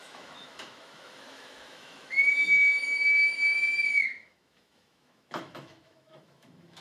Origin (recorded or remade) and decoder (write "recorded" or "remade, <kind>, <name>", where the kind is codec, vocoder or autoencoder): remade, autoencoder, DAC-VAE